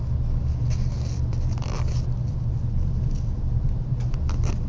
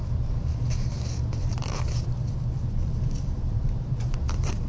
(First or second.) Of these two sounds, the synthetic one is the second